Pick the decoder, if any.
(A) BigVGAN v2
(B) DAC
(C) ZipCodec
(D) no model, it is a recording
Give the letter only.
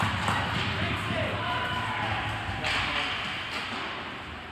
D